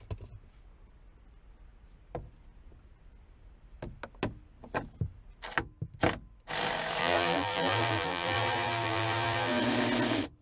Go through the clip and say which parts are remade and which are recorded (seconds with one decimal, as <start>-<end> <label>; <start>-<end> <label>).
0.0-7.0 recorded; 7.0-9.6 remade; 9.6-10.4 recorded